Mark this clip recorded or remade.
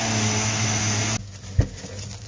recorded